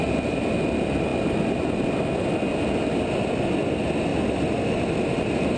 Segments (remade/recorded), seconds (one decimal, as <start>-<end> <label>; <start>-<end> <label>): 0.0-5.6 recorded